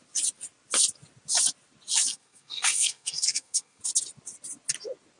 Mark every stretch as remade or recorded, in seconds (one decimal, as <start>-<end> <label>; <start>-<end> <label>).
0.0-2.1 recorded; 2.1-3.8 remade; 3.8-5.2 recorded